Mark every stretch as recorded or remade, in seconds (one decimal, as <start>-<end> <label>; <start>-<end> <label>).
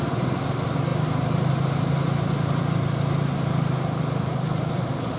0.0-5.2 recorded